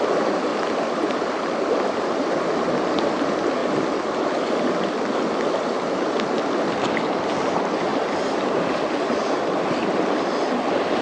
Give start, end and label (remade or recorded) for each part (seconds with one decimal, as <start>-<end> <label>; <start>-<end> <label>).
0.0-0.5 recorded; 0.5-2.3 remade; 2.3-11.0 recorded